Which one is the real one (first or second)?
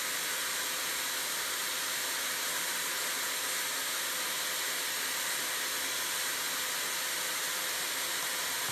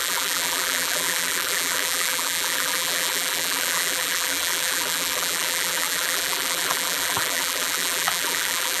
first